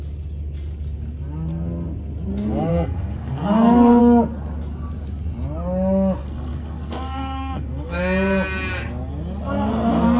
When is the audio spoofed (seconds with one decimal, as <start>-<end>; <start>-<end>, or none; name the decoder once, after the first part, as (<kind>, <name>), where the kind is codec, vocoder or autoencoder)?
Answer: 2.7-4.0 (codec, SNAC); 6.2-8.0